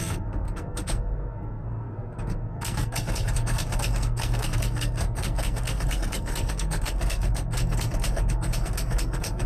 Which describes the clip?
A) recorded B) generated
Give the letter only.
B